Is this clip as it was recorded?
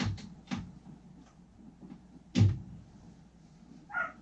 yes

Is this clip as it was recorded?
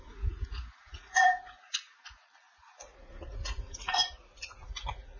no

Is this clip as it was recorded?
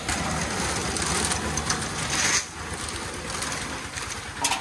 yes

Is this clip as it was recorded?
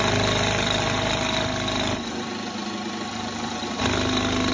yes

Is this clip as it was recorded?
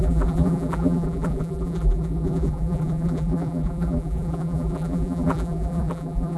no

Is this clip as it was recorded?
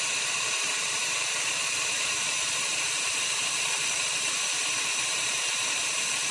no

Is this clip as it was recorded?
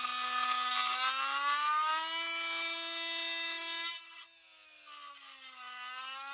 yes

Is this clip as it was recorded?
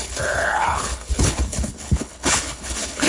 no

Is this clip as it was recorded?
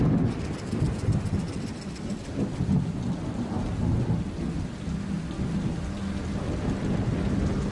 yes